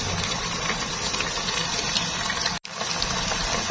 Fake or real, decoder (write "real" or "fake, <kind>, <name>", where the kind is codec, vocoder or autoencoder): real